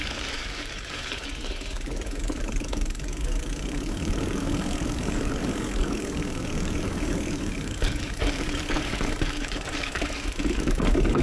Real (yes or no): no